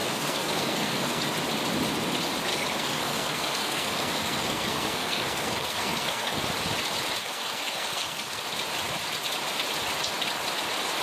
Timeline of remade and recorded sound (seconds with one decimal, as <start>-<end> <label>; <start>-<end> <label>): 0.0-1.3 remade; 1.3-2.5 recorded; 2.5-6.4 remade; 6.4-7.2 recorded; 7.2-8.4 remade; 8.4-11.0 recorded